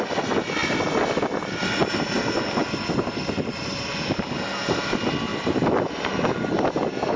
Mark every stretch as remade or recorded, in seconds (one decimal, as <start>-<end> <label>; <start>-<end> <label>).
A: 0.0-7.2 recorded